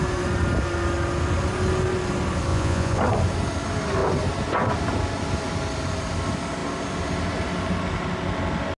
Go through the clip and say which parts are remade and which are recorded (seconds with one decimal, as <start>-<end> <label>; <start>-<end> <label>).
0.0-2.5 recorded; 2.5-3.0 remade; 3.0-8.8 recorded